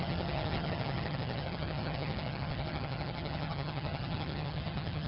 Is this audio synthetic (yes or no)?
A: yes